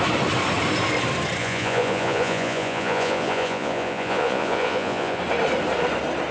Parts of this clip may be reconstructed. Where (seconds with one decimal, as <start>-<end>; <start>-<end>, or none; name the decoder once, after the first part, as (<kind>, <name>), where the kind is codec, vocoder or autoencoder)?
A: 1.4-5.2 (vocoder, Vocos)